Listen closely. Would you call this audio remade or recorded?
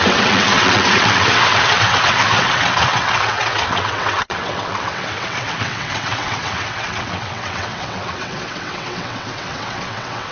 remade